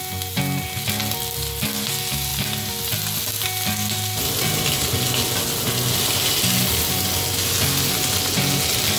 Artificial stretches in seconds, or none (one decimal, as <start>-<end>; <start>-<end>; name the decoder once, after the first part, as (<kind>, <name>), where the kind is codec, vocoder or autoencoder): none